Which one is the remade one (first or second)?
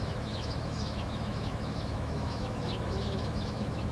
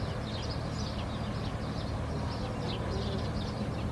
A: first